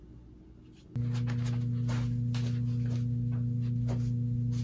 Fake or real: real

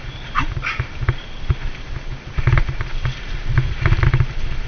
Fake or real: real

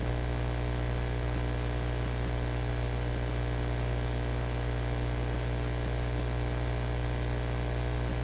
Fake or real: real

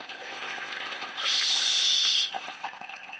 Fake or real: fake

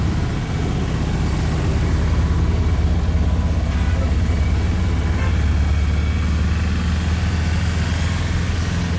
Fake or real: real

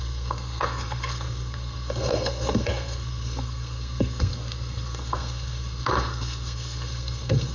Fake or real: fake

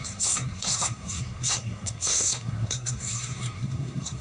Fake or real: fake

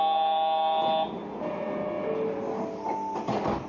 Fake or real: real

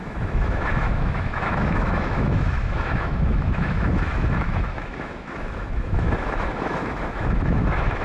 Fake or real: fake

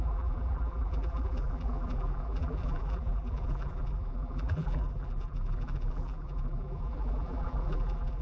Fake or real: fake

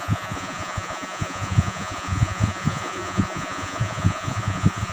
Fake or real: fake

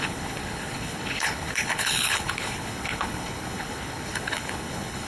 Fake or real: fake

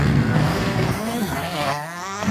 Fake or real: fake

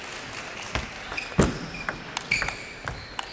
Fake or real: real